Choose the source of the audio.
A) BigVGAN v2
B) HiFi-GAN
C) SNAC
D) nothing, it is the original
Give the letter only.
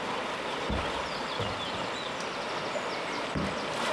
D